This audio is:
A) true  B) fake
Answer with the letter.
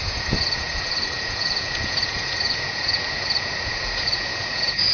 B